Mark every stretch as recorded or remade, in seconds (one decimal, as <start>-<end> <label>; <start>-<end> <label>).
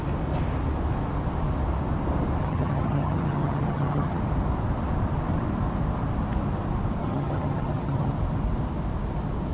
0.0-2.4 recorded; 2.4-4.2 remade; 4.2-7.0 recorded; 7.0-8.1 remade; 8.1-9.5 recorded